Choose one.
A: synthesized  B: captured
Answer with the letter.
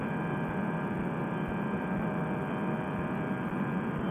B